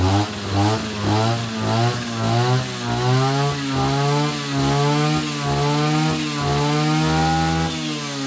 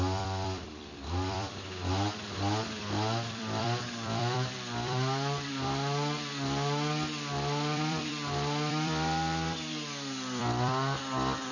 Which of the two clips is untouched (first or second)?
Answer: first